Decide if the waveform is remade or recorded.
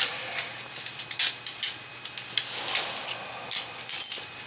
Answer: recorded